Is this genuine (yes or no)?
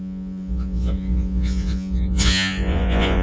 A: no